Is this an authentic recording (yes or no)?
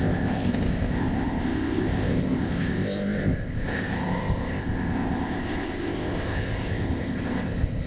no